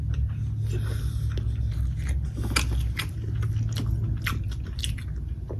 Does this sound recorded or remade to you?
recorded